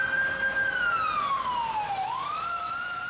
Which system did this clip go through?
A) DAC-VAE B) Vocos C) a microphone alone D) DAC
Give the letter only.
C